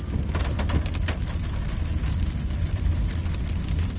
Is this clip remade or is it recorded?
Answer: recorded